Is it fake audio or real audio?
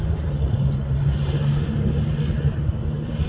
real